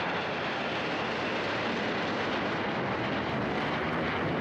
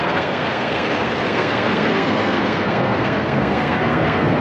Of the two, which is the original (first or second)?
first